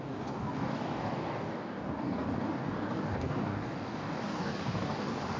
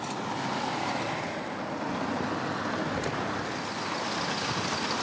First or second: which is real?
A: second